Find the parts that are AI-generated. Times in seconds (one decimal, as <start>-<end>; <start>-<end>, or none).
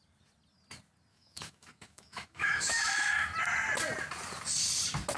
1.1-3.1